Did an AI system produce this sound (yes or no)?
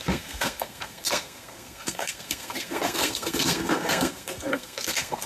yes